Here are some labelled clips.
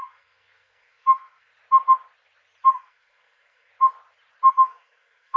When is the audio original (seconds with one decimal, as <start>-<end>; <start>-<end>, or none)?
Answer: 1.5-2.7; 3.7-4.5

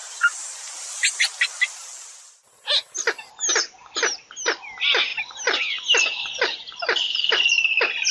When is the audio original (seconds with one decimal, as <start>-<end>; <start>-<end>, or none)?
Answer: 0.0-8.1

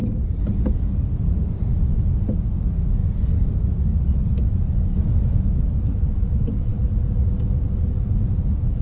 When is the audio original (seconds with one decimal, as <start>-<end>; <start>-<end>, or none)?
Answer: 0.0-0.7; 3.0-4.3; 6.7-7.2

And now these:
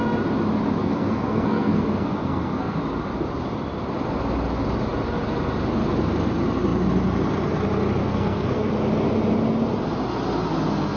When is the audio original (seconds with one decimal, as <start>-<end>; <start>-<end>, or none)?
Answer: 0.0-0.8; 2.8-8.0; 8.7-11.0

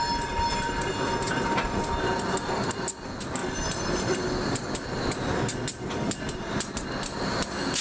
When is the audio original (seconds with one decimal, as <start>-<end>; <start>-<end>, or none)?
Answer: 0.0-7.8

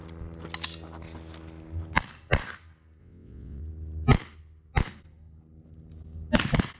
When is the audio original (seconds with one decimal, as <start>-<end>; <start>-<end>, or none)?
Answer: 0.0-3.0; 3.6-6.8

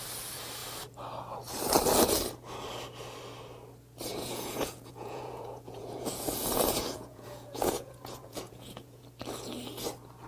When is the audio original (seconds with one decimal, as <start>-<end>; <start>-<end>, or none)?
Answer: 0.0-4.1; 9.0-10.3